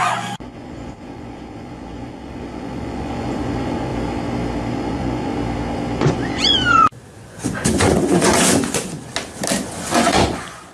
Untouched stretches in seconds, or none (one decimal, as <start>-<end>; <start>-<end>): 3.9-4.7; 5.3-6.0; 9.1-9.7